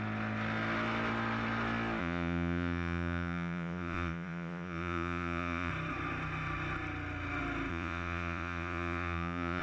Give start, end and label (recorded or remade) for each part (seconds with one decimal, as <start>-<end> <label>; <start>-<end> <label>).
0.0-2.0 recorded; 2.0-5.7 remade; 5.7-7.7 recorded; 7.7-9.6 remade